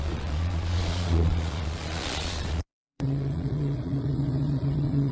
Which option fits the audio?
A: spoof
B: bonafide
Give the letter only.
A